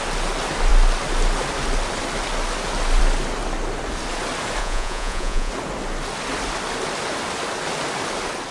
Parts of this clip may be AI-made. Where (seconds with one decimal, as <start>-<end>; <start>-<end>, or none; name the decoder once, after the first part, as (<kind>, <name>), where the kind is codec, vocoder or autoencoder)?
4.6-5.5 (vocoder, Vocos)